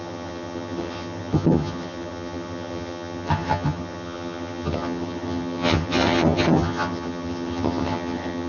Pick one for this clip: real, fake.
fake